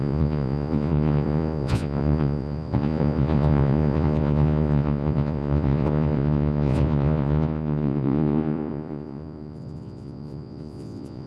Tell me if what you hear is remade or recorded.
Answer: remade